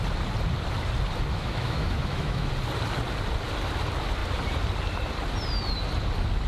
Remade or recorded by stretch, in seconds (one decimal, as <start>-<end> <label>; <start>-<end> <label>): 0.0-1.3 recorded; 1.3-2.5 remade; 2.5-6.5 recorded